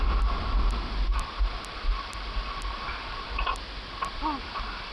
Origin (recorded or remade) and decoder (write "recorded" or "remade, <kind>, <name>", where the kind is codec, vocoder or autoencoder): recorded